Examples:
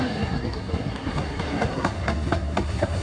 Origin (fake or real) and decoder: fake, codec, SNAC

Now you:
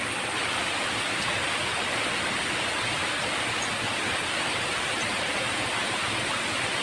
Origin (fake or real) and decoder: real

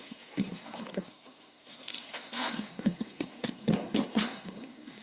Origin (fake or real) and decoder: fake, codec, SNAC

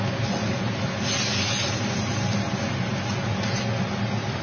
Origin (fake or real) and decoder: real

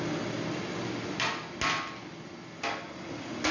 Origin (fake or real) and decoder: real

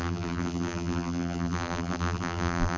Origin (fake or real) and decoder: fake, vocoder, BigVGAN v2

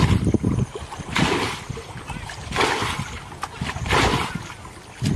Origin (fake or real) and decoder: real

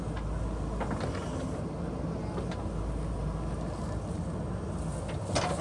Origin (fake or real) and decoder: real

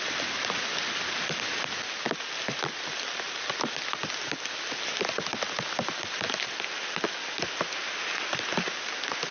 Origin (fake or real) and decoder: real